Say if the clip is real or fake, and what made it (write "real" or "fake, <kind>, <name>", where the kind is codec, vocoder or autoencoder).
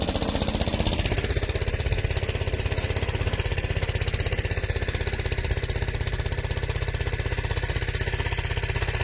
real